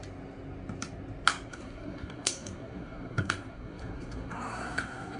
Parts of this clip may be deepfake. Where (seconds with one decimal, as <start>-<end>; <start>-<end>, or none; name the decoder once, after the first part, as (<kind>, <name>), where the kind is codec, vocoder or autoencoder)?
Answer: 1.5-5.2 (codec, SNAC)